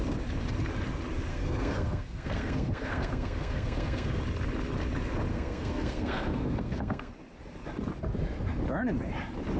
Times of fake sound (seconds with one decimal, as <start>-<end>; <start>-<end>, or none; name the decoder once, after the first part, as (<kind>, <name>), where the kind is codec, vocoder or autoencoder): 1.3-4.2 (codec, SNAC); 5.3-7.1